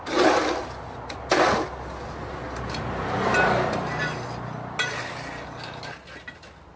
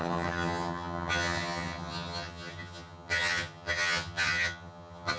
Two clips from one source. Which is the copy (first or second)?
second